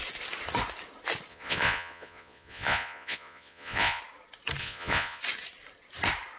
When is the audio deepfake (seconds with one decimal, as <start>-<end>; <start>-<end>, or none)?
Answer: 1.3-4.0; 4.6-5.2